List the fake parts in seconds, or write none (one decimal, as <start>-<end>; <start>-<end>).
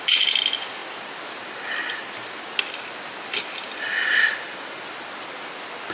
none